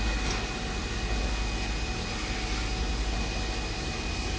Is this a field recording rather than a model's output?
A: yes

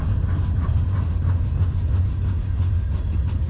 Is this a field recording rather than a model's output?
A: yes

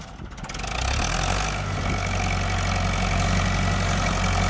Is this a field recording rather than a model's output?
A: yes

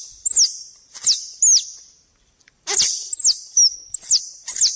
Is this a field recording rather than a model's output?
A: yes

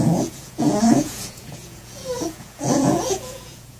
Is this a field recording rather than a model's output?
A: no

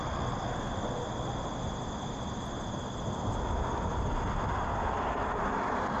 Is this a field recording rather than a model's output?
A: yes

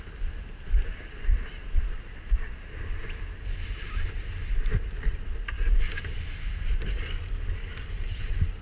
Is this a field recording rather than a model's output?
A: yes